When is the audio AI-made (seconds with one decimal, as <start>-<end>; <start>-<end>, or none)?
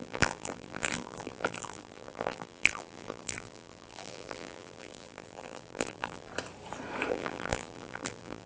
0.0-6.3; 7.1-8.5